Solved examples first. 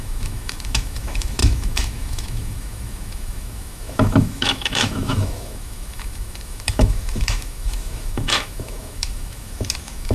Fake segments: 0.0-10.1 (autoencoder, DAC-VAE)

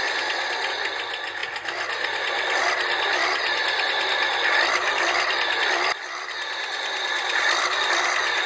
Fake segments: none

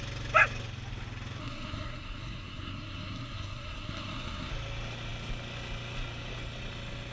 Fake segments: 1.4-4.5 (codec, SNAC)

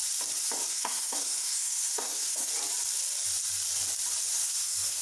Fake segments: 0.7-2.5 (codec, SNAC); 4.3-5.0

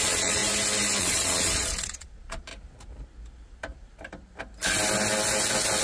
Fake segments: 0.0-0.4 (vocoder, Vocos); 1.0-2.5